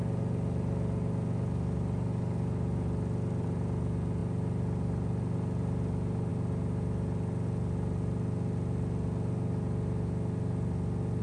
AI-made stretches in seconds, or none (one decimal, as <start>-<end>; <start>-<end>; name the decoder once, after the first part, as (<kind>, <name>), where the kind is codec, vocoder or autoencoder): none